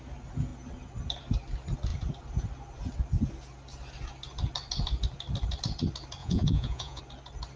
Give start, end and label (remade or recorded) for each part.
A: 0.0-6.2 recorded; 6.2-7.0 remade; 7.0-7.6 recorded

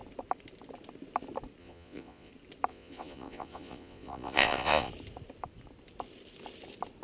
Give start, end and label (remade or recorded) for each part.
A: 0.0-1.6 recorded; 1.6-2.3 remade; 2.3-2.7 recorded; 2.7-4.9 remade; 4.9-7.0 recorded

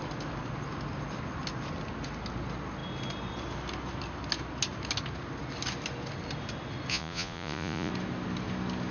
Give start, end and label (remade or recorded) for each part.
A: 0.0-6.9 recorded; 6.9-7.9 remade; 7.9-8.9 recorded

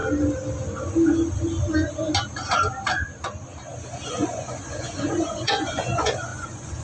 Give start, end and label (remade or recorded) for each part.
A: 0.0-4.1 recorded; 4.1-6.8 remade

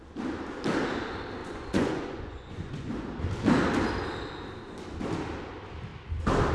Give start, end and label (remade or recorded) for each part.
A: 0.0-1.4 recorded; 1.4-2.9 remade; 2.9-6.5 recorded

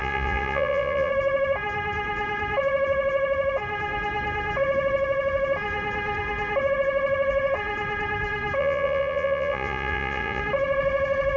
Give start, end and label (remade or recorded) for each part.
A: 0.0-1.1 remade; 1.1-8.6 recorded; 8.6-10.4 remade; 10.4-11.4 recorded